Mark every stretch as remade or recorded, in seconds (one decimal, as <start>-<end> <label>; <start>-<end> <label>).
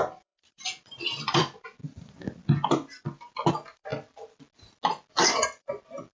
0.0-1.8 remade; 1.8-3.5 recorded; 3.5-3.9 remade; 3.9-5.1 recorded; 5.1-6.1 remade